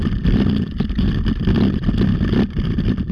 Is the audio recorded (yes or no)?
yes